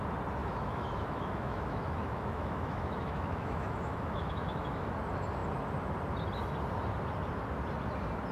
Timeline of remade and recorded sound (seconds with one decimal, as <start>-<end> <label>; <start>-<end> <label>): 0.0-0.4 recorded; 0.4-4.9 remade; 4.9-8.3 recorded